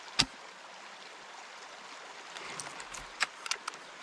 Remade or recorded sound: recorded